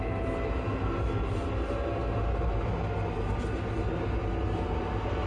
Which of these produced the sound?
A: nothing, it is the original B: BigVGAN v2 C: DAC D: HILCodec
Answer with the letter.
A